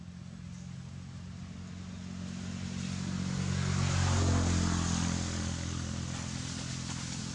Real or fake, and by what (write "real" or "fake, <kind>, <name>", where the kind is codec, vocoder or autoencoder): real